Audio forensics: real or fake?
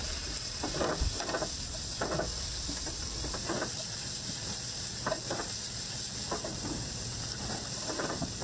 fake